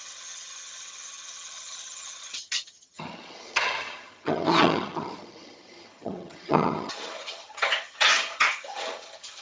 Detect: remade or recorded remade